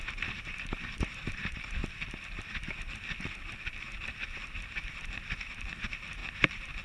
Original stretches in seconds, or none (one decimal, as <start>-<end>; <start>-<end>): 1.8-5.8; 6.2-6.8